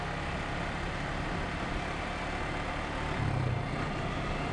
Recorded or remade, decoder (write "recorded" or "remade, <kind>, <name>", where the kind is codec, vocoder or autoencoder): recorded